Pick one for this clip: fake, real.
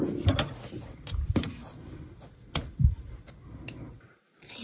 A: real